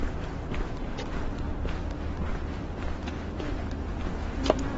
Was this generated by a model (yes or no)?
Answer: no